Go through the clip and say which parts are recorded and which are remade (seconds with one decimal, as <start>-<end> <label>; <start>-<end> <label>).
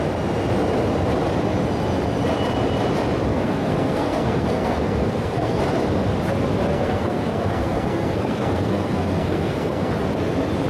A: 0.0-3.3 recorded; 3.3-5.6 remade; 5.6-6.7 recorded; 6.7-9.9 remade; 9.9-10.7 recorded